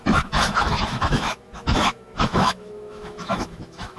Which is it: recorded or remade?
remade